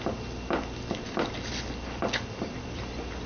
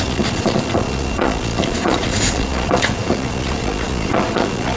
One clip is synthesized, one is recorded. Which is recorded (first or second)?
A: first